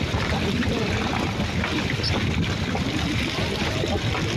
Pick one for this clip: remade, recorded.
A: remade